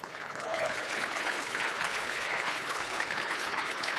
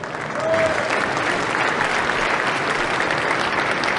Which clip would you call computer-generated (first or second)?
first